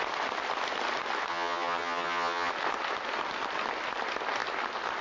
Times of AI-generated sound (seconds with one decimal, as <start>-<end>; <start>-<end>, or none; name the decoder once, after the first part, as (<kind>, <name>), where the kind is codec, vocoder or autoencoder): 1.3-2.5 (vocoder, HiFi-GAN)